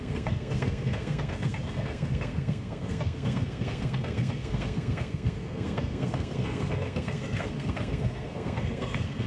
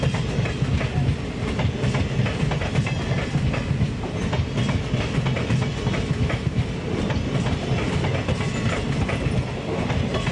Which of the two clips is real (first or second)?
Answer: second